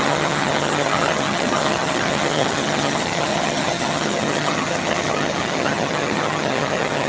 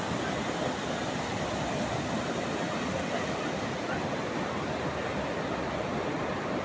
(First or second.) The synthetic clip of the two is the first